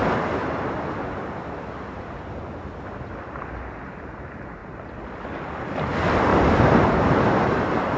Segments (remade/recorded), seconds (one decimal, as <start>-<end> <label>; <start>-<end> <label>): 0.0-6.3 recorded; 6.3-8.0 remade